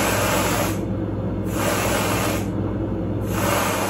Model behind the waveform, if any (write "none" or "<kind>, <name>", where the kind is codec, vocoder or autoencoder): none